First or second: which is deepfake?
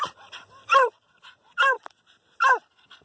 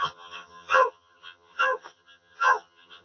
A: second